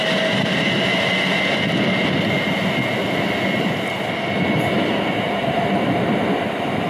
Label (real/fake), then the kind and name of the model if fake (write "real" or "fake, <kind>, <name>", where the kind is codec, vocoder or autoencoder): real